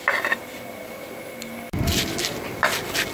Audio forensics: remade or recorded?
recorded